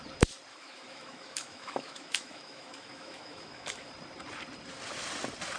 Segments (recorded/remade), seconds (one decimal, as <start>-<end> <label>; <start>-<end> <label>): 0.0-0.5 recorded; 0.5-3.9 remade; 3.9-5.6 recorded